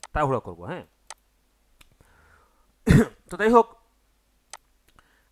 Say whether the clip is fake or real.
real